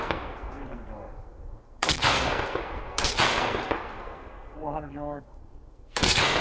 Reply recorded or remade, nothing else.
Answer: remade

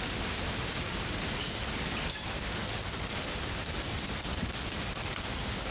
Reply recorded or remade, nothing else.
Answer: recorded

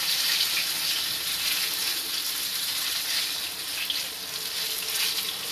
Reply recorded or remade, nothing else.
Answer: recorded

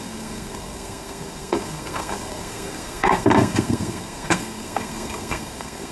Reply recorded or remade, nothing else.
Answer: remade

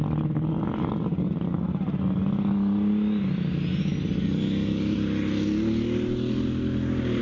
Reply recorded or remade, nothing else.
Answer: recorded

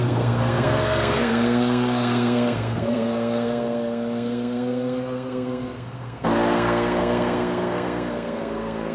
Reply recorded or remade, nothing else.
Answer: remade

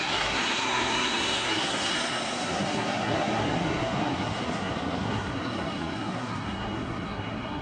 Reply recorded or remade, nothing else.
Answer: remade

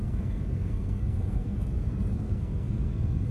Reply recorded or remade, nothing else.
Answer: remade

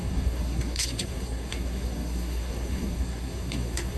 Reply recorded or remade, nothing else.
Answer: remade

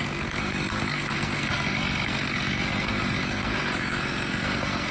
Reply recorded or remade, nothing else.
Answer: remade